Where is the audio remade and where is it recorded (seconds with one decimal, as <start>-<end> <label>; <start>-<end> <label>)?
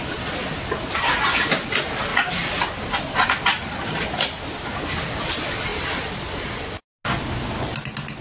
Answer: 0.0-2.1 recorded; 2.1-4.0 remade; 4.0-4.5 recorded; 4.5-5.2 remade; 5.2-5.7 recorded; 5.7-6.8 remade; 6.8-8.2 recorded